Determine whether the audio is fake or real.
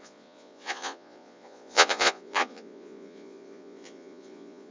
fake